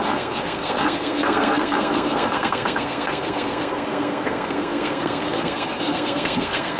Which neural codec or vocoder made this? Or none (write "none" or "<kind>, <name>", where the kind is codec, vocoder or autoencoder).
codec, SNAC